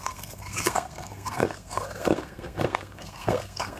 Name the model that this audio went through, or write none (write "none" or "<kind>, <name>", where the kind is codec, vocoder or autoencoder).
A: codec, SNAC